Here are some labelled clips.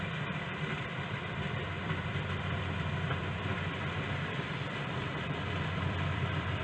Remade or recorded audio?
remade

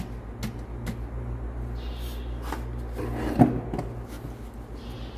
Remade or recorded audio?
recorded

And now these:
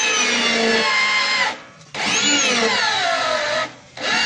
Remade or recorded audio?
recorded